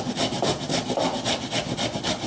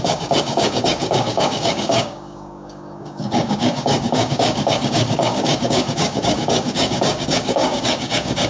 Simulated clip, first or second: second